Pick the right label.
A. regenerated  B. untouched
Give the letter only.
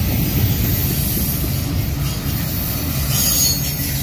B